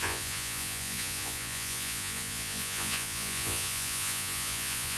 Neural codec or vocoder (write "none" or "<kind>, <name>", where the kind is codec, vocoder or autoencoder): vocoder, Vocos